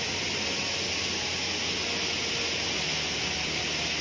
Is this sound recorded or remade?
recorded